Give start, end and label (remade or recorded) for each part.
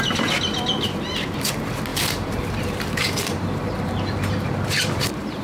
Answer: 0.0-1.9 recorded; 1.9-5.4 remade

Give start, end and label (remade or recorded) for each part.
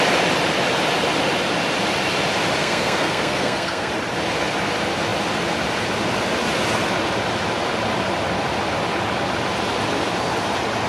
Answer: 0.0-2.6 recorded; 2.6-3.9 remade; 3.9-10.9 recorded